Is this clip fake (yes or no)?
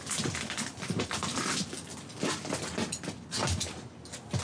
no